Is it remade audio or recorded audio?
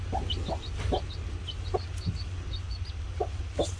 recorded